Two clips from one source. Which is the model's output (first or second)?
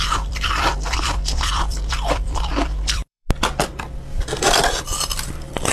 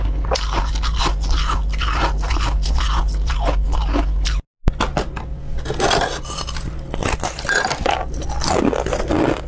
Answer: first